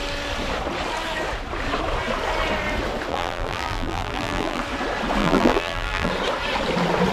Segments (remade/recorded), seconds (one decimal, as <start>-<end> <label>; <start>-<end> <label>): 0.0-3.1 recorded; 3.1-4.6 remade; 4.6-5.2 recorded; 5.2-6.1 remade; 6.1-7.1 recorded